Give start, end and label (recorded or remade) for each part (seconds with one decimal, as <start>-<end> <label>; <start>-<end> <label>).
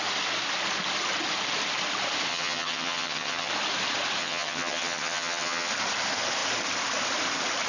0.0-2.3 recorded; 2.3-3.5 remade; 3.5-4.2 recorded; 4.2-5.7 remade; 5.7-7.7 recorded